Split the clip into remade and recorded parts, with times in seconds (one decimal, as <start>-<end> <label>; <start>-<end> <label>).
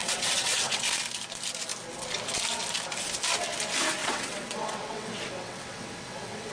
0.0-0.8 remade; 0.8-4.0 recorded; 4.0-6.5 remade